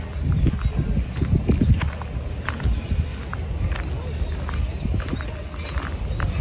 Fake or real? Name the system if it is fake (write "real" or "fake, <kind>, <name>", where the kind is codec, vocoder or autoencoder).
real